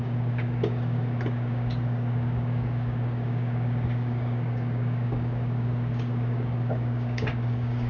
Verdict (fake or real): fake